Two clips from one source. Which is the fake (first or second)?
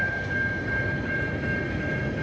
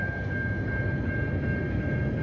first